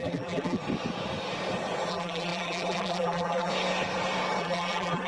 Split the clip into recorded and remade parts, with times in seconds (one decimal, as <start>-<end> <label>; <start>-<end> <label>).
0.0-0.6 remade; 0.6-1.9 recorded; 1.9-3.5 remade; 3.5-4.4 recorded; 4.4-5.1 remade

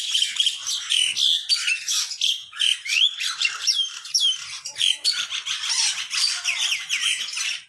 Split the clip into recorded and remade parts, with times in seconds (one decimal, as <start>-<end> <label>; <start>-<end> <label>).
0.0-1.1 remade; 1.1-1.9 recorded; 1.9-7.7 remade

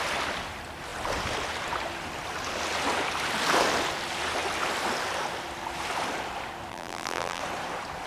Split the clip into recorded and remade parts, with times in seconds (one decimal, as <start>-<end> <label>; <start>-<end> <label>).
0.0-6.7 recorded; 6.7-7.4 remade; 7.4-8.1 recorded